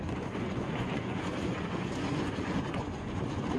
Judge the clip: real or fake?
fake